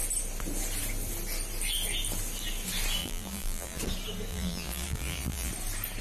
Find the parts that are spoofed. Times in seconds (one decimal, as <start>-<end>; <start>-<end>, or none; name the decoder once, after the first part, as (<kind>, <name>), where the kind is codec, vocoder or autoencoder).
3.0-3.8 (vocoder, BigVGAN v2); 4.3-5.5

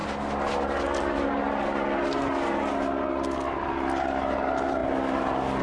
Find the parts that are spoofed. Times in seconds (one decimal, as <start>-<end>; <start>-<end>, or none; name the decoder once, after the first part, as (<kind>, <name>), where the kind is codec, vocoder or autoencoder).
none